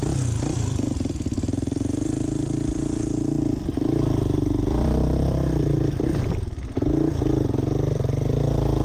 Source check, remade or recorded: remade